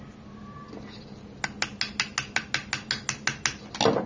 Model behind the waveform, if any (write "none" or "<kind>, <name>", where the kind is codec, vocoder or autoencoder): none